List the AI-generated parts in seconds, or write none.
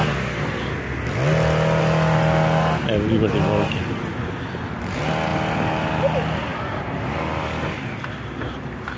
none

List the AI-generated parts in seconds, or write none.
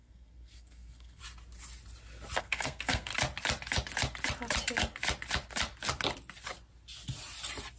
0.0-1.2 (codec, SNAC); 2.4-3.1